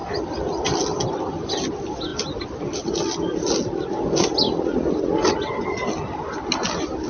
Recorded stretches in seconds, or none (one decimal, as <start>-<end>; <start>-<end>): 0.0-7.1